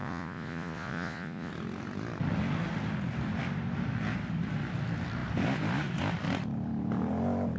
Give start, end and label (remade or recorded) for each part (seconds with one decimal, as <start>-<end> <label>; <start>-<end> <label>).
0.0-1.5 remade; 1.5-7.6 recorded